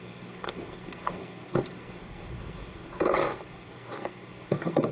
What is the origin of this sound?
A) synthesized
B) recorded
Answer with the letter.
A